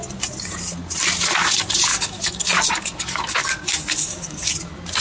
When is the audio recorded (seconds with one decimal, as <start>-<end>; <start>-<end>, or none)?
0.0-1.9; 4.5-5.0